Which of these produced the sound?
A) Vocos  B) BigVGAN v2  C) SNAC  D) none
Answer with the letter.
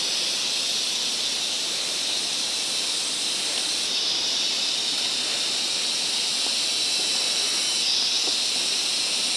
D